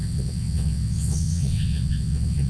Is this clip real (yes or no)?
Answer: no